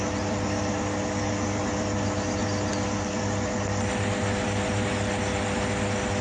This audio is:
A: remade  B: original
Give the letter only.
B